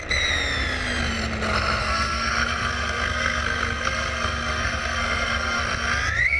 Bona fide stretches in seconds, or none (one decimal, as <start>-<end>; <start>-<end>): 0.0-1.8; 5.6-6.4